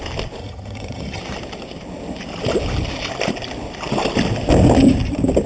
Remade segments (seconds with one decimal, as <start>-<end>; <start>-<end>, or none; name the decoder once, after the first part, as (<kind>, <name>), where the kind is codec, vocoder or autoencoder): 0.4-1.2 (vocoder, HiFi-GAN)